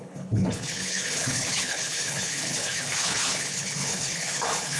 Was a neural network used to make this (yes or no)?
yes